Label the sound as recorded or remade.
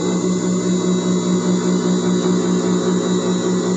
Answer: recorded